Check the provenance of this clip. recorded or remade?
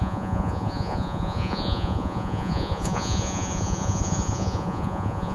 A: remade